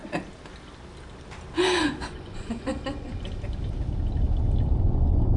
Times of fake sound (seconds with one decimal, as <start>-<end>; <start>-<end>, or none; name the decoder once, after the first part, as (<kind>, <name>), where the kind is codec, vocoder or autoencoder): 1.8-2.7 (vocoder, Vocos); 4.8-5.4